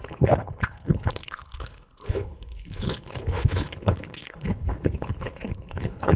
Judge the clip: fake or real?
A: fake